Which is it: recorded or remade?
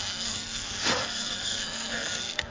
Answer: remade